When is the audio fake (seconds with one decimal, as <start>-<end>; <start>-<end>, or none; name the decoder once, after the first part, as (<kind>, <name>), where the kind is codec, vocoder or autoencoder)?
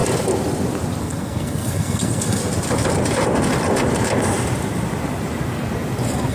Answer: 1.0-2.4 (codec, SNAC)